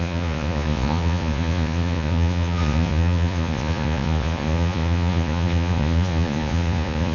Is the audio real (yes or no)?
no